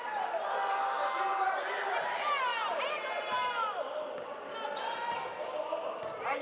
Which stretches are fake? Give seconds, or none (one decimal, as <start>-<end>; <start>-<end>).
none